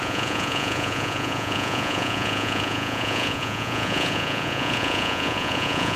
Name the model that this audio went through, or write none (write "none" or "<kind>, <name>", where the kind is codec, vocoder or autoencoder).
vocoder, Vocos